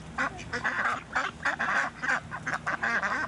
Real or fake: real